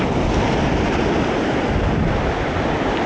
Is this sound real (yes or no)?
yes